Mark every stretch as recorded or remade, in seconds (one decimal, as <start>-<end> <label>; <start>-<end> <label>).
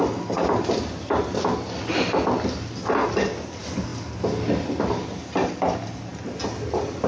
0.0-7.1 recorded